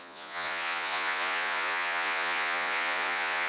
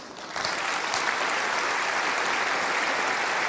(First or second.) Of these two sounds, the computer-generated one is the first